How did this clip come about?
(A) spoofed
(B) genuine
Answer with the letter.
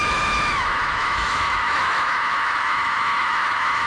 A